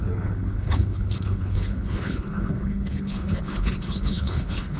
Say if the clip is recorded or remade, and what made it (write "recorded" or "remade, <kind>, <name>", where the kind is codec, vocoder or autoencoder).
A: remade, codec, HILCodec